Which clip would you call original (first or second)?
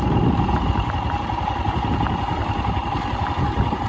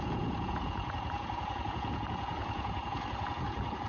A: first